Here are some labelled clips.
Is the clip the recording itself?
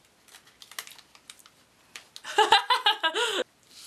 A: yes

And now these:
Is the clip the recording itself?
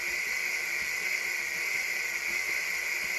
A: yes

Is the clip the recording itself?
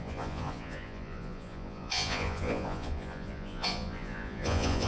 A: no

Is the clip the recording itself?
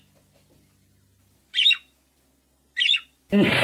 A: yes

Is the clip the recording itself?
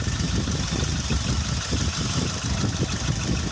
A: no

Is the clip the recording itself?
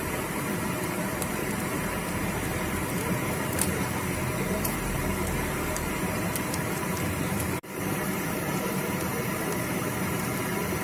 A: no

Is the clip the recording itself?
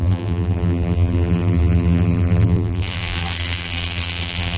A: no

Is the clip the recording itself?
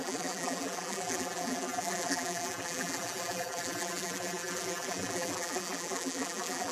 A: no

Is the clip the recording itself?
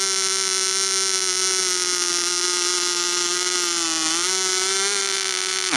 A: yes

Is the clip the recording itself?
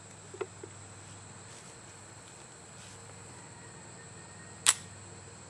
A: yes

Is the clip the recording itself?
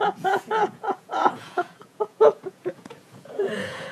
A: no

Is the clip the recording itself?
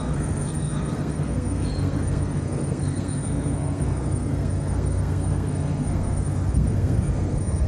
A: no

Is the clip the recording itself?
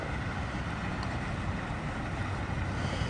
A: yes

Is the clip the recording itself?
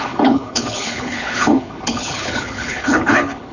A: no